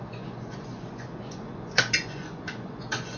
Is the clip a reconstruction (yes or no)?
yes